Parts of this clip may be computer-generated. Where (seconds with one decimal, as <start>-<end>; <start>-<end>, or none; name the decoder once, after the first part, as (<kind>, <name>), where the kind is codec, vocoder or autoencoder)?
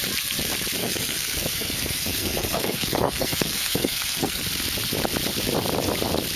0.8-4.4 (codec, SNAC)